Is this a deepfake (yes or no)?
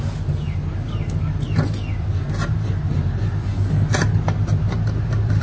no